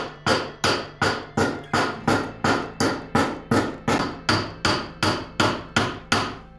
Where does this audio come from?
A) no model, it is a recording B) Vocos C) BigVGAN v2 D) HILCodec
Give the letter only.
A